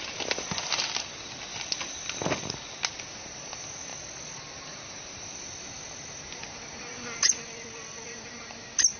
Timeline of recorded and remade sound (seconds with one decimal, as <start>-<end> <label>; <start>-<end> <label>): 0.0-9.0 recorded